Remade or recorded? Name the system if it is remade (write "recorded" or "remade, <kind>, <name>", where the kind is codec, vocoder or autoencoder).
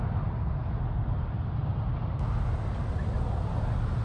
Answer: recorded